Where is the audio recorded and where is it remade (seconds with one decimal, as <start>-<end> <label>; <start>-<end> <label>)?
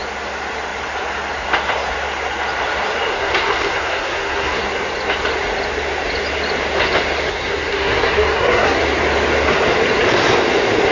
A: 0.0-3.1 recorded; 3.1-4.6 remade; 4.6-7.3 recorded; 7.3-8.8 remade; 8.8-10.9 recorded